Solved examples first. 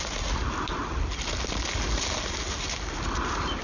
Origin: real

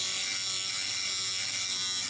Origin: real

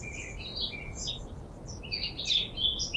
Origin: real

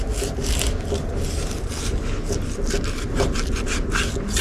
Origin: real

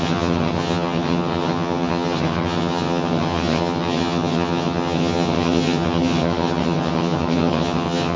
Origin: fake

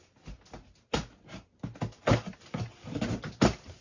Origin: real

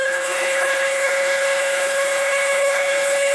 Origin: fake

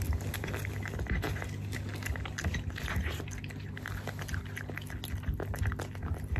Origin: real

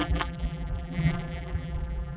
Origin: fake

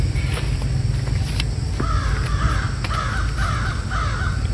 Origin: real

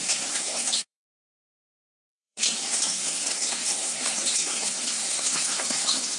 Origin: fake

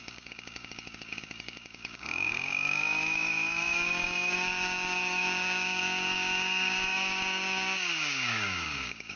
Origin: fake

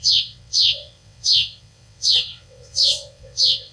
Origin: fake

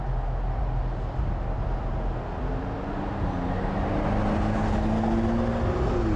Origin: real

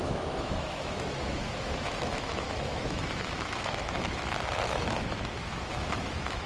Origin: fake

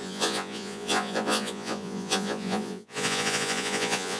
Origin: fake